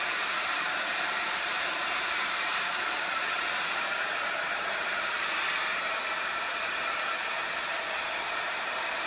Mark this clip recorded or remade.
remade